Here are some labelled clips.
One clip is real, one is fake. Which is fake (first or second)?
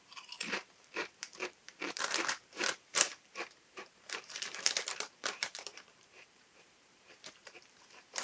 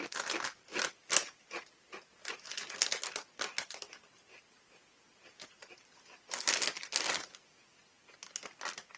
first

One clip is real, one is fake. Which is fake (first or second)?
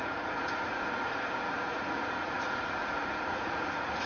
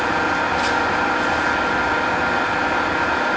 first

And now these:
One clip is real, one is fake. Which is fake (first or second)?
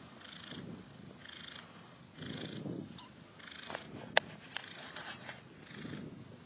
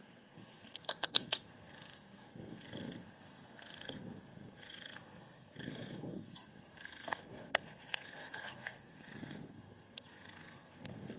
second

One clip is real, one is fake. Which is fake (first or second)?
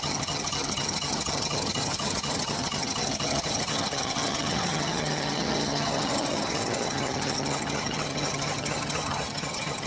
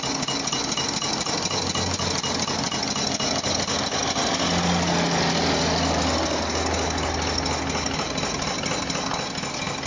first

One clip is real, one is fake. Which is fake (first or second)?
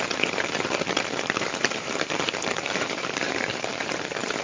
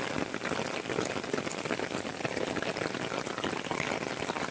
first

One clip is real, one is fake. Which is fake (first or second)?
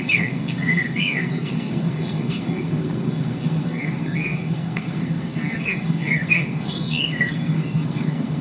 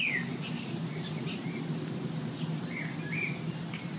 first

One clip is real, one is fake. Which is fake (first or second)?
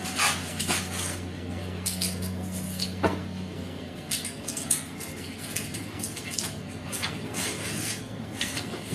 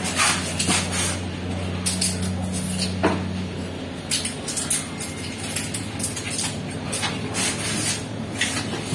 first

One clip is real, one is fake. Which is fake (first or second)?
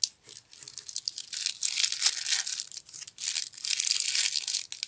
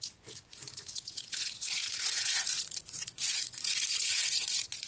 second